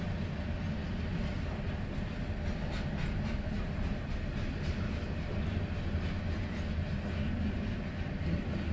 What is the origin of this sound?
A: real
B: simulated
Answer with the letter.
A